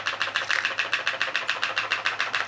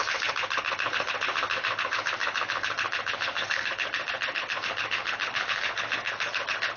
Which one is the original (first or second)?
first